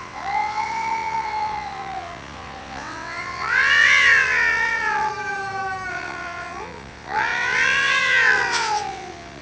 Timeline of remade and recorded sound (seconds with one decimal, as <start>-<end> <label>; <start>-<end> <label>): 0.0-5.1 remade; 5.1-5.9 recorded; 5.9-9.4 remade